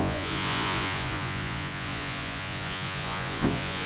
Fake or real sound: fake